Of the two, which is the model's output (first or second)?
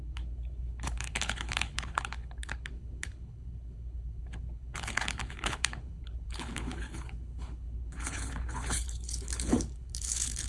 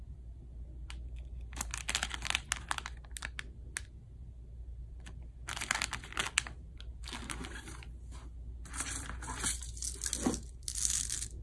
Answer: first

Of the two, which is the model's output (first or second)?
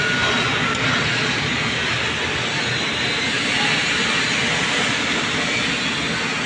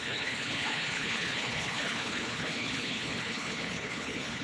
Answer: second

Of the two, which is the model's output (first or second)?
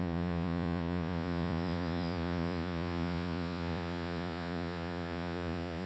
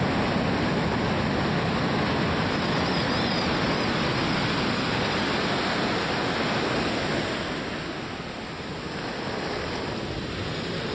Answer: first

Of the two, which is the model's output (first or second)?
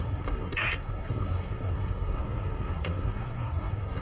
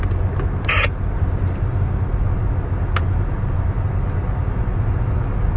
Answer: first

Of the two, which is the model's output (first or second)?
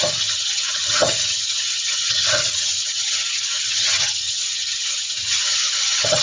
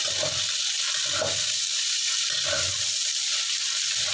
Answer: first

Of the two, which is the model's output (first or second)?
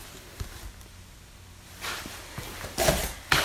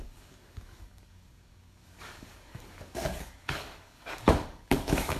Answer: second